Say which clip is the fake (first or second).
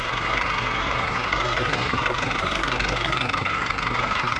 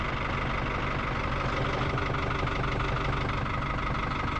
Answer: first